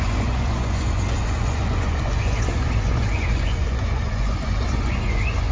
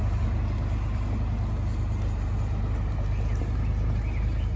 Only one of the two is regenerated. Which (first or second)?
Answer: first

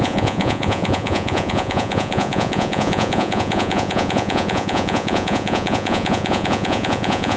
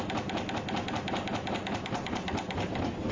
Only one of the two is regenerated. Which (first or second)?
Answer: first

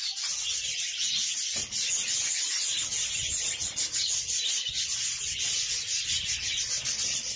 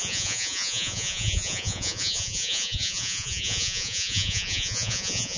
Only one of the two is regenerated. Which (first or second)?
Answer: second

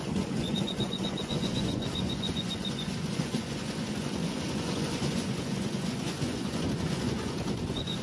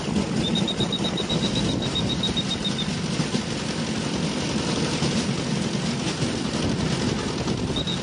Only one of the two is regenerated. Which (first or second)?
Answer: first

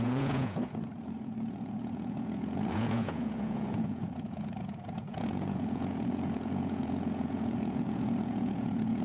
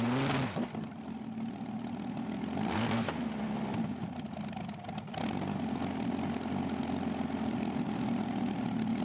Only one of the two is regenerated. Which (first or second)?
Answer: first